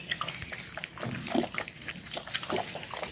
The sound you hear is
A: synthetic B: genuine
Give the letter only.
B